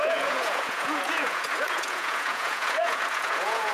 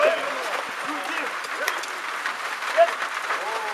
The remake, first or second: first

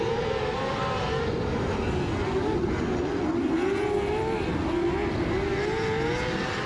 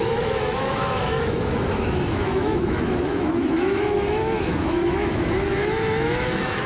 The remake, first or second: second